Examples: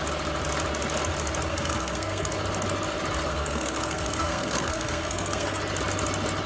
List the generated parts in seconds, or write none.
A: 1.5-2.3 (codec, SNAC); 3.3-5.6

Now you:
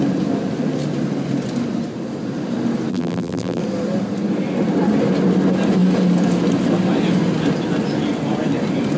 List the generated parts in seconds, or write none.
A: 2.9-3.6 (vocoder, BigVGAN v2)